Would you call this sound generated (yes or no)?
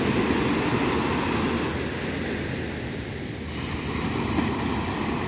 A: no